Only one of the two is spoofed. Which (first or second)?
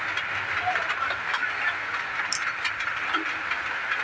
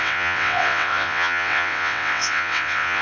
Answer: second